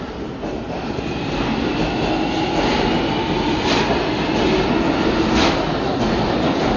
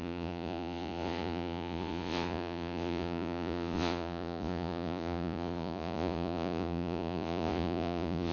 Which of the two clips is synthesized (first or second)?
second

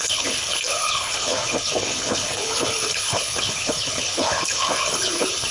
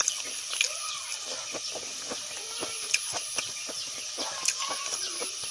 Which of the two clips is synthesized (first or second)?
first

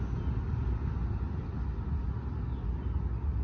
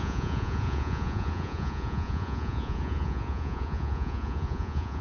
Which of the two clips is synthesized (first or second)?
second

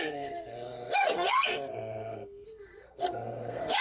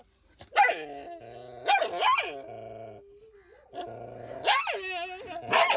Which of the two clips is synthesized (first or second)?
first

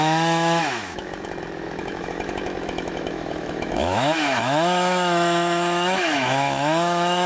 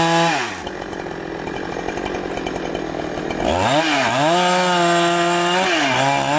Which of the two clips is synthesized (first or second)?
first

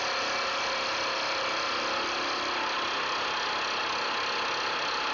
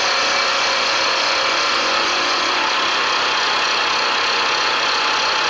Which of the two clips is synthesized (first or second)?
second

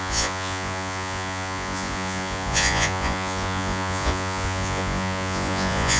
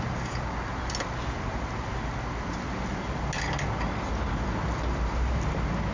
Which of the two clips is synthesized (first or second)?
first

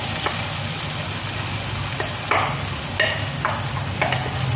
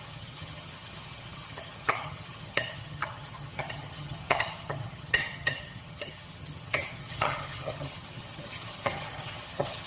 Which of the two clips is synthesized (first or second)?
second